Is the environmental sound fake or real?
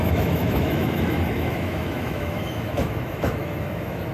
fake